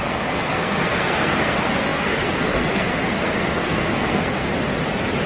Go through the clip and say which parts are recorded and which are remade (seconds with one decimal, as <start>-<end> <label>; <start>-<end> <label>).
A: 0.0-4.5 remade; 4.5-5.3 recorded